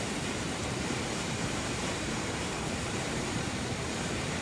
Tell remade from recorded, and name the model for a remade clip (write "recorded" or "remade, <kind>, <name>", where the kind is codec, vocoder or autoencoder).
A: remade, vocoder, BigVGAN v2